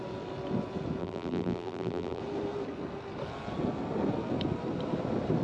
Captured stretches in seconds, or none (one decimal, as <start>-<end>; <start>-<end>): 0.0-1.0; 2.2-5.4